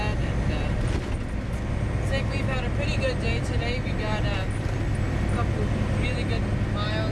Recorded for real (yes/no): yes